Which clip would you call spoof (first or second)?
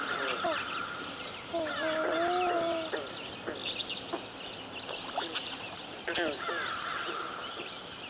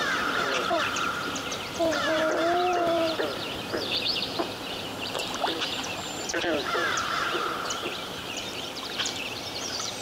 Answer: second